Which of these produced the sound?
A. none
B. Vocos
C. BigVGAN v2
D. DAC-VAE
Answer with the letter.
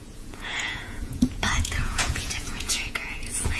B